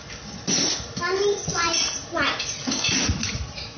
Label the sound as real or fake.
real